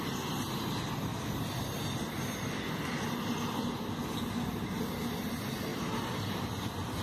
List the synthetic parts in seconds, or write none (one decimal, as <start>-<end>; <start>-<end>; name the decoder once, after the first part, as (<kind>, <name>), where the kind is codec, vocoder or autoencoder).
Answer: 0.0-1.1 (vocoder, BigVGAN v2); 5.1-5.7; 6.4-7.0